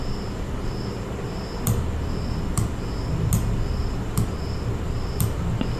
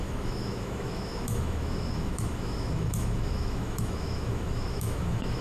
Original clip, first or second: first